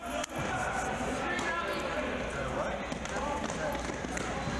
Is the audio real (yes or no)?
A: yes